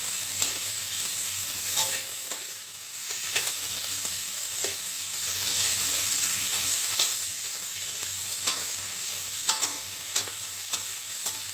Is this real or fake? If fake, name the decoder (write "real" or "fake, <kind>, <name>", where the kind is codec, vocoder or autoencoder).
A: fake, codec, DAC